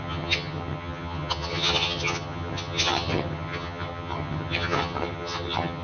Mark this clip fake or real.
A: fake